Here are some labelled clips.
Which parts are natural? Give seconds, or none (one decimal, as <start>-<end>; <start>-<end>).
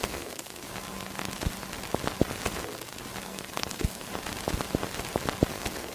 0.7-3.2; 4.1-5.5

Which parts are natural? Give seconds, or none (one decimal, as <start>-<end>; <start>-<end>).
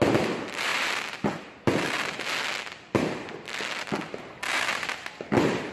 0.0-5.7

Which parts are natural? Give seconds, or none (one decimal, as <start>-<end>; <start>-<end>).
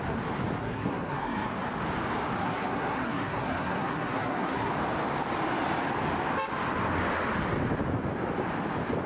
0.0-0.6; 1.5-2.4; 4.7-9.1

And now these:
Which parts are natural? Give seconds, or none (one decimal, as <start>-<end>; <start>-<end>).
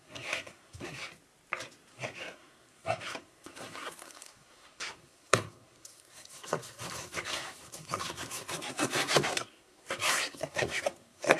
1.1-1.9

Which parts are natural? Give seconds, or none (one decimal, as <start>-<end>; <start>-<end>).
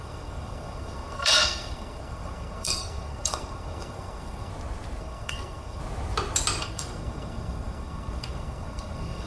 4.5-5.0; 5.8-6.6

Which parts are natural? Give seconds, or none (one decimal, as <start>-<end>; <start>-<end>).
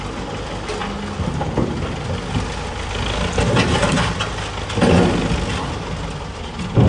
0.0-6.9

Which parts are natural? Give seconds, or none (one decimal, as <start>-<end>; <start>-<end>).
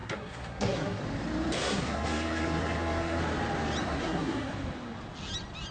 1.0-1.6; 3.2-3.8; 4.5-5.7